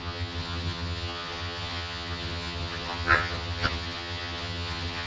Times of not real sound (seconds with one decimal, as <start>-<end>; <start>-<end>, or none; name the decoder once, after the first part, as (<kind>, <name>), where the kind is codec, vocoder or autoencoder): 0.0-5.1 (vocoder, HiFi-GAN)

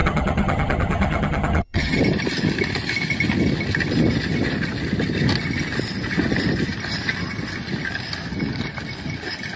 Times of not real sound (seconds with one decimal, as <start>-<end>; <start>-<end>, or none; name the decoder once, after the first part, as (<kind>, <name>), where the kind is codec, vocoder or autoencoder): 0.0-2.0 (vocoder, HiFi-GAN)

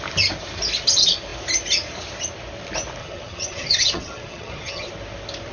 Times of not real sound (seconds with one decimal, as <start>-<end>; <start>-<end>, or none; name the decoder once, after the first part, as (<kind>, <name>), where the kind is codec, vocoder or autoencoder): 3.0-4.9 (vocoder, HiFi-GAN)

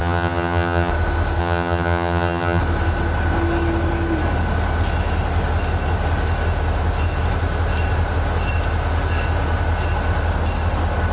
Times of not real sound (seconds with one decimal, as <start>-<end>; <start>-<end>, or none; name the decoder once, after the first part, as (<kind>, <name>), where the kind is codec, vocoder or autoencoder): 0.0-0.9 (vocoder, HiFi-GAN); 1.4-2.6

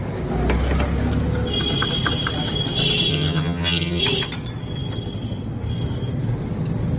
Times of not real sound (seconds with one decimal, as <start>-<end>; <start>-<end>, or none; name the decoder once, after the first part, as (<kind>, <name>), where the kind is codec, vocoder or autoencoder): 3.1-4.0 (vocoder, HiFi-GAN)

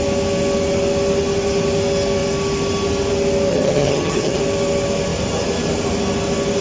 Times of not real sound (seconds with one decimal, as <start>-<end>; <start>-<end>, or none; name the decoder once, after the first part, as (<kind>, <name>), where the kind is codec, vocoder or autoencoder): 3.5-4.4 (vocoder, HiFi-GAN)

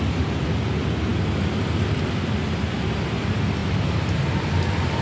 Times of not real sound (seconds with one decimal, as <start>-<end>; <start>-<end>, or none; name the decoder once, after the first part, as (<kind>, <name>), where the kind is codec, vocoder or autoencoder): none